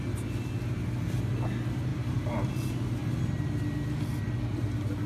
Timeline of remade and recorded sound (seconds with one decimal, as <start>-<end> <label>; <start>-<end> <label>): 0.0-1.9 recorded; 1.9-2.5 remade; 2.5-5.1 recorded